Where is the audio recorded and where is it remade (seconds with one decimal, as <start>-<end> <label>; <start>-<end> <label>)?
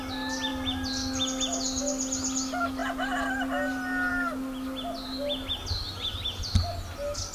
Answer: 0.0-7.3 recorded